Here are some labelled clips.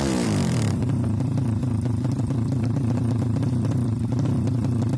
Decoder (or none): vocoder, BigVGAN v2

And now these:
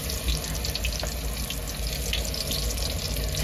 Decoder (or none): none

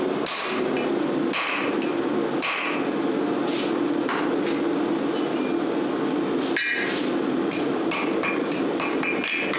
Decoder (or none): none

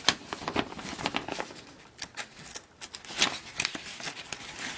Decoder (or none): none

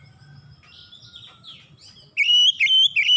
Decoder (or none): none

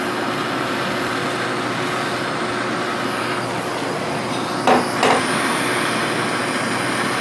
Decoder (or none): none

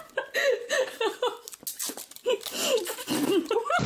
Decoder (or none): none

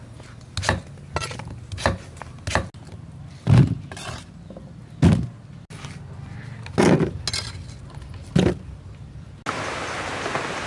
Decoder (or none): none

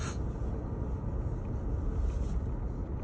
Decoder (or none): none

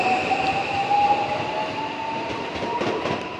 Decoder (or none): vocoder, BigVGAN v2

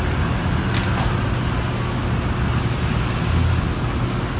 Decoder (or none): none